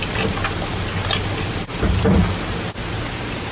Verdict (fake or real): real